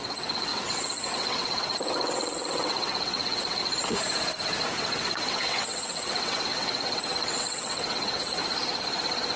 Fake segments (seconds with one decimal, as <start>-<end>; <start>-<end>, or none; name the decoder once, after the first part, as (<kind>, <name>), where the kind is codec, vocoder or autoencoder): 0.0-3.6 (vocoder, WaveNeXt); 4.8-8.4